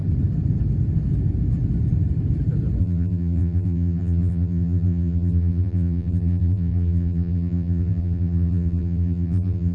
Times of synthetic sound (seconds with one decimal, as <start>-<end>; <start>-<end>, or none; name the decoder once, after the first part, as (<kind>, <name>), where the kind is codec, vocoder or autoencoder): 2.8-9.7 (vocoder, BigVGAN v2)